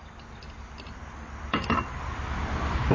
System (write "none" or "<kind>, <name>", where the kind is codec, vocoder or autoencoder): none